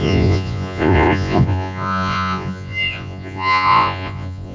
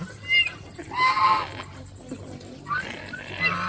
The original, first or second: second